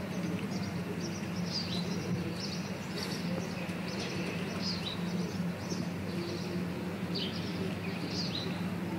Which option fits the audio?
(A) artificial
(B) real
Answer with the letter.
B